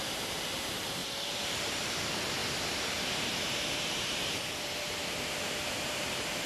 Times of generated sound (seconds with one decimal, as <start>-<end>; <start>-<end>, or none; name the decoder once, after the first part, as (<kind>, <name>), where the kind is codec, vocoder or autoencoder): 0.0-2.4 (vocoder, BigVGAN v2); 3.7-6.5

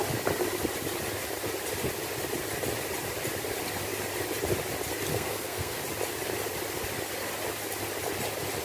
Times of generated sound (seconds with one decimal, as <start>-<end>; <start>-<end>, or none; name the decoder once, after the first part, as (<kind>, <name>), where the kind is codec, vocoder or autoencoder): 5.1-5.8 (codec, SNAC)

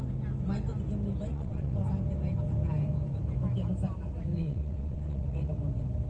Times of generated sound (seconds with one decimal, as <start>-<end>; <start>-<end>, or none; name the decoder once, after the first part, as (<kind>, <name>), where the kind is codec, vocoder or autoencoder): 1.3-1.8 (vocoder, WaveNeXt); 4.3-5.5

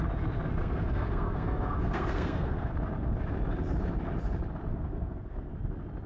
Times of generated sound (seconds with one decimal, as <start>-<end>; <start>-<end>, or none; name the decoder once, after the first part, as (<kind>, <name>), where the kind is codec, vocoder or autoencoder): 0.6-2.7 (codec, SNAC); 4.7-5.5

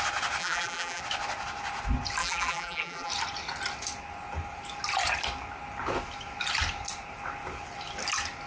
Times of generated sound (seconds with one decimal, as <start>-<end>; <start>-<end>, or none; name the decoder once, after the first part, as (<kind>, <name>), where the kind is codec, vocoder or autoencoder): 0.4-1.0 (vocoder, BigVGAN v2); 2.2-3.1

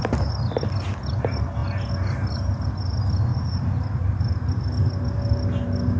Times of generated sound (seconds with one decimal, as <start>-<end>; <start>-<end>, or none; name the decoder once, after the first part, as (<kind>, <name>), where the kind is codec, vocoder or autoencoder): 3.3-4.3 (vocoder, BigVGAN v2)

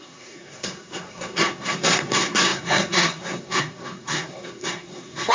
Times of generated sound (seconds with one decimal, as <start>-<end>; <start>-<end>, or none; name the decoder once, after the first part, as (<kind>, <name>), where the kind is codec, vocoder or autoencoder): 0.0-5.3 (codec, SNAC)